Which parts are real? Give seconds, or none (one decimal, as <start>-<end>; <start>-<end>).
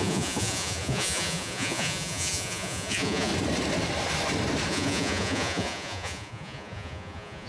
3.3-4.7